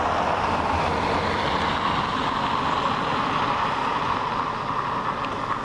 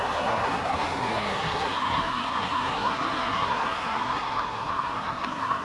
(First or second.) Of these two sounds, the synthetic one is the second